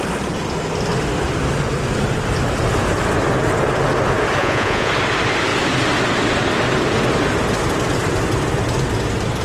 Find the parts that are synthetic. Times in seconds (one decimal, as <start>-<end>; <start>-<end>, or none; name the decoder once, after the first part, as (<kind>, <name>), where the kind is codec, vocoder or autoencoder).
4.4-4.9 (vocoder, Vocos)